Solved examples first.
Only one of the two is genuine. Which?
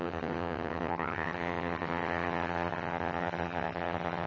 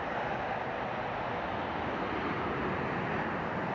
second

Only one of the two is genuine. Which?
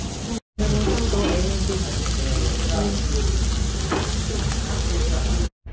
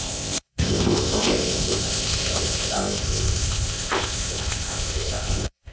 first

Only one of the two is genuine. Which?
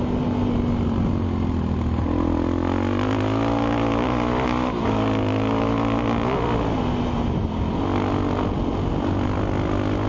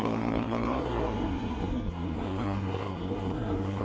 first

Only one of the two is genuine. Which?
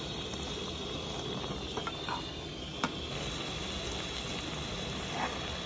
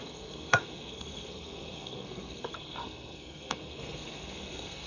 first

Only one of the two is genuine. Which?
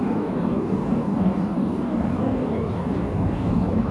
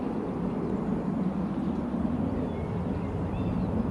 second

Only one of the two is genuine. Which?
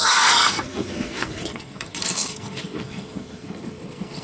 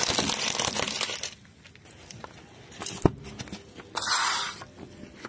second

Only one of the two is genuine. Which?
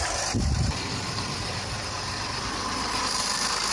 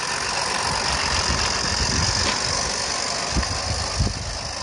second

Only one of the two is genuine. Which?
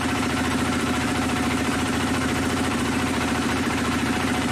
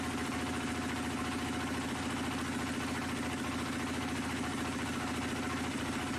second